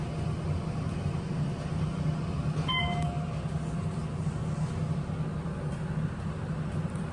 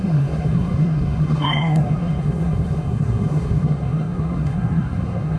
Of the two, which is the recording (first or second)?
first